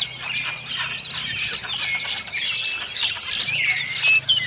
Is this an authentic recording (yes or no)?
yes